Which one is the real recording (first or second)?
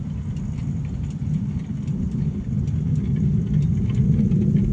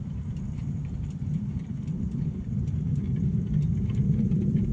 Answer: first